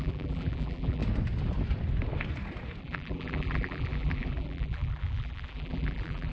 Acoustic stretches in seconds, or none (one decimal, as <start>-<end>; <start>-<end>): 1.0-2.8